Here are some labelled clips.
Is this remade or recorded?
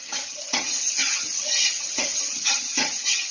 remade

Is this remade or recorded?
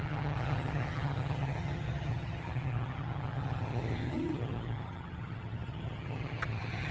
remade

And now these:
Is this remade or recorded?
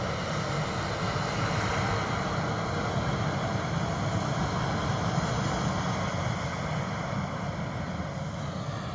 recorded